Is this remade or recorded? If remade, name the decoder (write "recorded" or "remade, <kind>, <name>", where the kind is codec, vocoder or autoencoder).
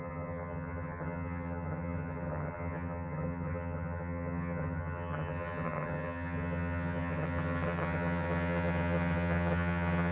remade, vocoder, HiFi-GAN